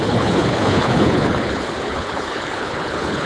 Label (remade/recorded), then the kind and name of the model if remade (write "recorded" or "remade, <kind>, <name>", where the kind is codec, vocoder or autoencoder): remade, codec, HILCodec